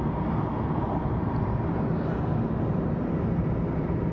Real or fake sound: real